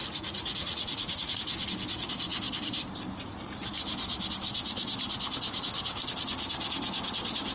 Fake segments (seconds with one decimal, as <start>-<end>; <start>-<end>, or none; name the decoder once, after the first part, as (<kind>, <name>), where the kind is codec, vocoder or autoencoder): 0.0-1.4 (vocoder, Vocos)